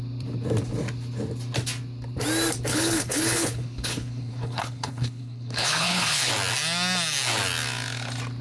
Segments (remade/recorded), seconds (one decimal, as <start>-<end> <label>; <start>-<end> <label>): 0.0-2.7 recorded; 2.7-6.3 remade; 6.3-8.4 recorded